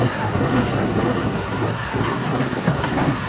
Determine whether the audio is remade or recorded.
remade